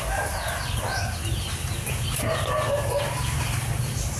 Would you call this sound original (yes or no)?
yes